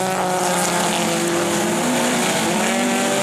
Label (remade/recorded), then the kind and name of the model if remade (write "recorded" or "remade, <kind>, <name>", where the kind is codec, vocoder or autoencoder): recorded